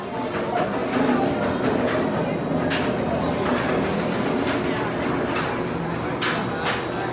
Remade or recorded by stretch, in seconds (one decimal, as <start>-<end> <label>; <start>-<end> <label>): 0.0-3.9 recorded; 3.9-5.4 remade; 5.4-7.1 recorded